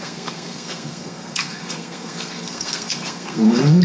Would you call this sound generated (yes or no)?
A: yes